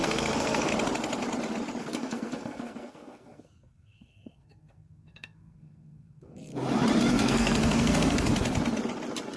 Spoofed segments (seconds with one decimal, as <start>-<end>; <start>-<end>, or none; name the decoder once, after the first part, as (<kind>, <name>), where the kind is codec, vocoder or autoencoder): 0.0-0.7 (codec, SNAC); 1.8-6.5; 7.1-8.3